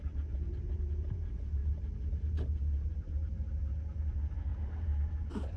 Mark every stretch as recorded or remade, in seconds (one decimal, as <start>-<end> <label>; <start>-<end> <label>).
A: 0.0-5.6 recorded